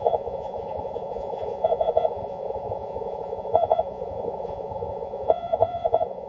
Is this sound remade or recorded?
remade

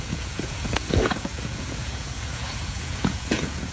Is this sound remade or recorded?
remade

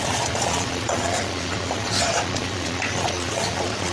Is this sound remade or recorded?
remade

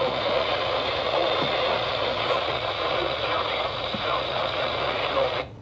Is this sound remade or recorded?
remade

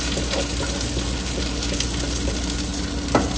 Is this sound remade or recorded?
recorded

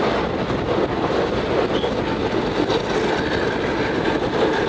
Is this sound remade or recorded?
recorded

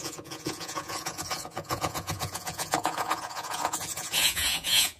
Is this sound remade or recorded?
remade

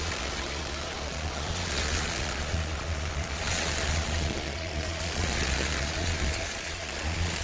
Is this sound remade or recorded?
remade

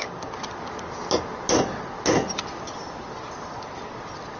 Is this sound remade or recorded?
recorded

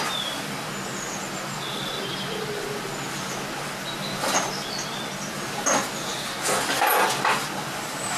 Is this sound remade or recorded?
recorded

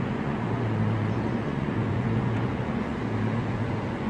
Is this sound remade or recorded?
remade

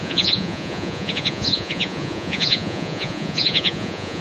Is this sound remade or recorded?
remade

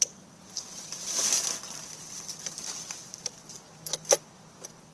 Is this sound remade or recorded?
recorded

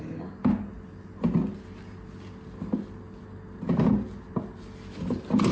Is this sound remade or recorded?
recorded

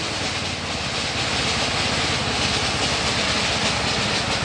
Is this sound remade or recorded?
recorded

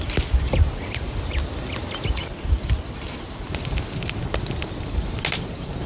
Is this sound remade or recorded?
recorded